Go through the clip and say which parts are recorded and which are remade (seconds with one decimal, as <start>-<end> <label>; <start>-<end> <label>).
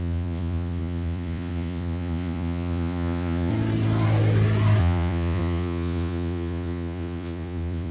0.0-3.5 remade; 3.5-4.8 recorded; 4.8-7.9 remade